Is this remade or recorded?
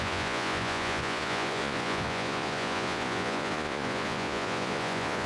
remade